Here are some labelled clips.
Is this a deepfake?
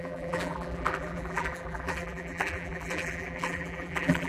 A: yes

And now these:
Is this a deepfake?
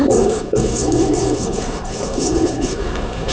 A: yes